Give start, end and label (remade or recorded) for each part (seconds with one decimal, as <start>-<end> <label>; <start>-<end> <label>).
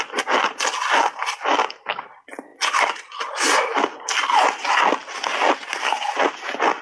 0.0-6.8 recorded